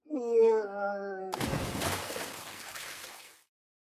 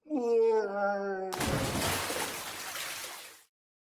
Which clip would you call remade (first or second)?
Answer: first